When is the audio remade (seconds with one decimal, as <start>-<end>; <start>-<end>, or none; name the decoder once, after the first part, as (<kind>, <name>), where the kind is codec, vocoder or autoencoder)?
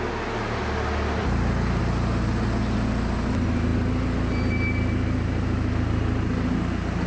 none